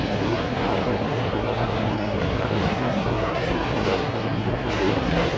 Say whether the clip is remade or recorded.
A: remade